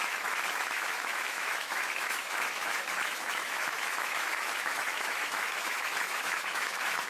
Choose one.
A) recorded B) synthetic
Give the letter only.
B